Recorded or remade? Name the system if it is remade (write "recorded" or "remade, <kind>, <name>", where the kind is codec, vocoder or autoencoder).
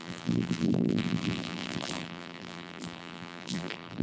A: remade, vocoder, BigVGAN v2